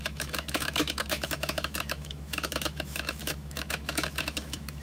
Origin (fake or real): fake